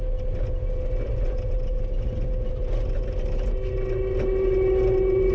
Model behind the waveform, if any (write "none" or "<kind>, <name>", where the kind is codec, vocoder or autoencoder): none